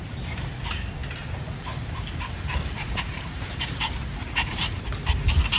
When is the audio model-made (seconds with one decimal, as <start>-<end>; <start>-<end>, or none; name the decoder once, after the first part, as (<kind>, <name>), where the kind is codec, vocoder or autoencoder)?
0.0-5.6 (vocoder, BigVGAN v2)